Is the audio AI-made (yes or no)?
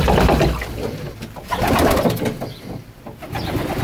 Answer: yes